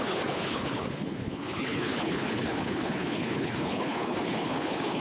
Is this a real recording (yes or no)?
no